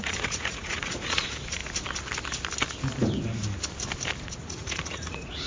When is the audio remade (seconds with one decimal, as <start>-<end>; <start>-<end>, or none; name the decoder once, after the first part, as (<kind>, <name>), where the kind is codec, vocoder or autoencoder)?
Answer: 0.0-1.6 (vocoder, Vocos); 4.2-5.5